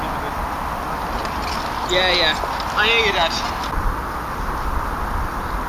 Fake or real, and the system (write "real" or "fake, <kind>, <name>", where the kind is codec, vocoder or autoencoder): real